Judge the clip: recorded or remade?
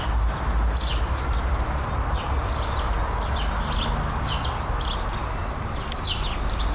recorded